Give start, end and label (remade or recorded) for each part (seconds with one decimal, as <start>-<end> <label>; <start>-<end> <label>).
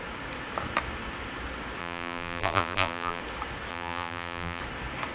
0.0-1.8 recorded; 1.8-3.2 remade; 3.2-3.7 recorded; 3.7-4.6 remade; 4.6-5.1 recorded